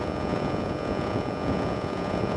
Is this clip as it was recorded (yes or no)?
no